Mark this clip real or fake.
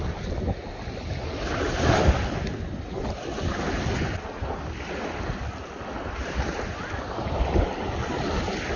real